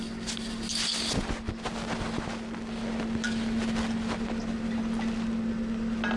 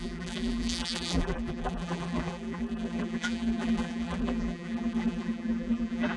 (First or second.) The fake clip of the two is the second